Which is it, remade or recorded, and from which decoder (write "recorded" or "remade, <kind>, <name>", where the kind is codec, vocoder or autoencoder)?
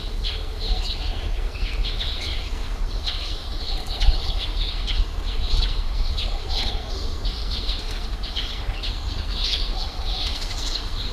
remade, codec, SNAC